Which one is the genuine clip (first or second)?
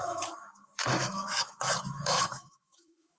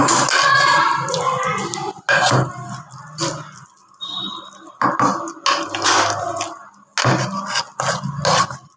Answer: second